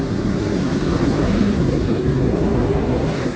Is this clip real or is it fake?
fake